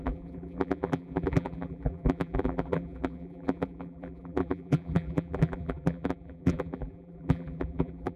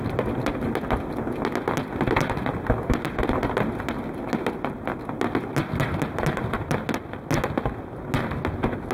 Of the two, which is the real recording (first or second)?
second